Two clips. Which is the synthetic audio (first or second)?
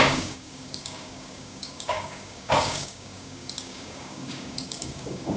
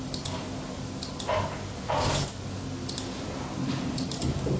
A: first